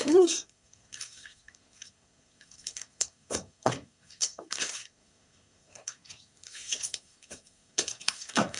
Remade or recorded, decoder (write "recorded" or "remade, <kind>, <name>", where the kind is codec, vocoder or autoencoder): remade, codec, SNAC